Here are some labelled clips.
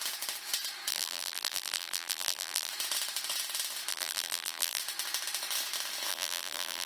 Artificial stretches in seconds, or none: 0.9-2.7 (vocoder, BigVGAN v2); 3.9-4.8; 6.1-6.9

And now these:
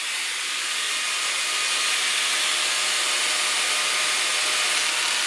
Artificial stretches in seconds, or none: none

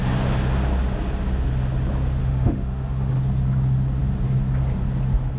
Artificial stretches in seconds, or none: 2.2-3.1 (autoencoder, DAC-VAE)

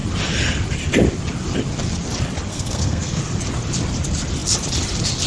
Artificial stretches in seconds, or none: 2.5-3.2 (codec, SNAC)

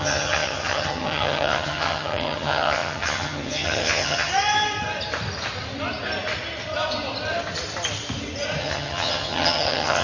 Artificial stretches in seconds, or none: 0.0-4.3 (vocoder, HiFi-GAN); 8.6-10.0